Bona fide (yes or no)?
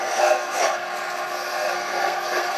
no